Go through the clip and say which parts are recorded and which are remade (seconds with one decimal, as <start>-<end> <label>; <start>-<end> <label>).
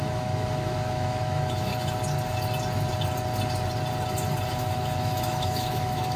0.0-1.7 remade; 1.7-4.5 recorded; 4.5-6.2 remade